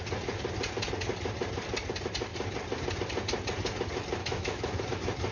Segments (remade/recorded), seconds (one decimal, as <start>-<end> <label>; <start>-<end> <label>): 0.0-4.2 recorded; 4.2-4.8 remade; 4.8-5.3 recorded